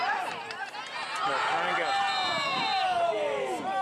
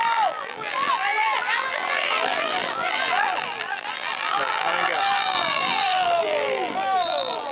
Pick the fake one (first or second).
second